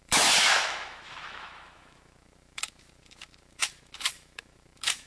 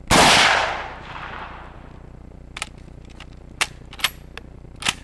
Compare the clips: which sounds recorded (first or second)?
second